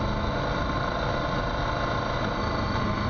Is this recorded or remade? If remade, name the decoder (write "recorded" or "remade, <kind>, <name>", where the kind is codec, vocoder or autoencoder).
recorded